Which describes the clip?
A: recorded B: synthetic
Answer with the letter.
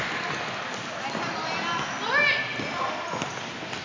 A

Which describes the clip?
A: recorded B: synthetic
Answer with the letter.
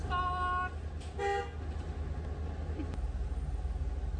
A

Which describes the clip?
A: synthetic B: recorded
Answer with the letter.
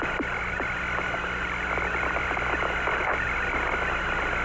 B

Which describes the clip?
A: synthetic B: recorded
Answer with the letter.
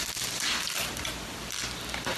B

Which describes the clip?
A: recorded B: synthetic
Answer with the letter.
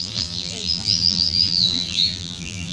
B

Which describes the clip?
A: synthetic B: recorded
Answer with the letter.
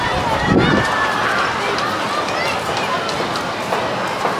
B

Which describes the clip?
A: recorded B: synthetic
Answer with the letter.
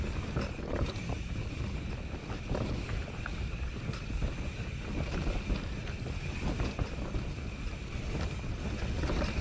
A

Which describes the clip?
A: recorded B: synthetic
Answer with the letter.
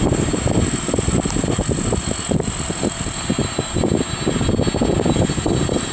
A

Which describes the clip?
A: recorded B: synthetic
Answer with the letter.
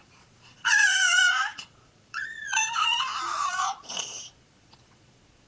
B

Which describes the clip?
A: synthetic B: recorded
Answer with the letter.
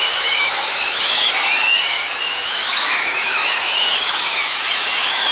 A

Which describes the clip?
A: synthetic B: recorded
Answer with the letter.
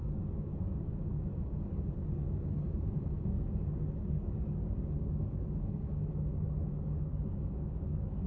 A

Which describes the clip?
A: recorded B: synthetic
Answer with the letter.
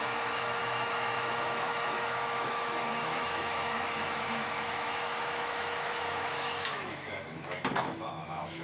B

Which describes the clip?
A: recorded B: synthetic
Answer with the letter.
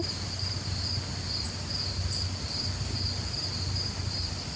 A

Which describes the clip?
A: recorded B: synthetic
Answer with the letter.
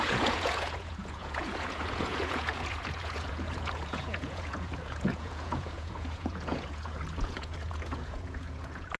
B